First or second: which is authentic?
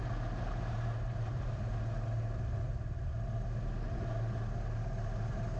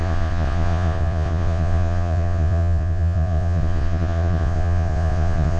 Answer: first